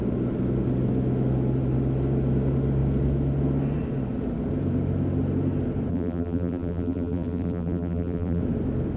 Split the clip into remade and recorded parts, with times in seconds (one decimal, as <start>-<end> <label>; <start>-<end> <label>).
0.0-5.9 recorded; 5.9-8.4 remade; 8.4-9.0 recorded